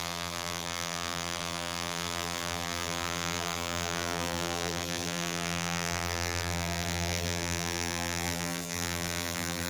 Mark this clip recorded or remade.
remade